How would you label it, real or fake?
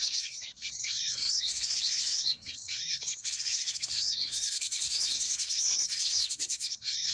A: fake